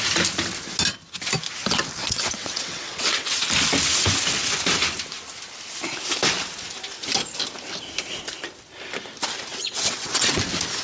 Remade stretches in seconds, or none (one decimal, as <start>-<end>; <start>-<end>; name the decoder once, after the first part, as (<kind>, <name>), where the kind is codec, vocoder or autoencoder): 2.0-3.5 (vocoder, WaveNeXt); 9.5-10.4